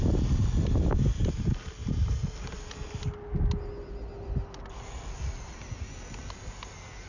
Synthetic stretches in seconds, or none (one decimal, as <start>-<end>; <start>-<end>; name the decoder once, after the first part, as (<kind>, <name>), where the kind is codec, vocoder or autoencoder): none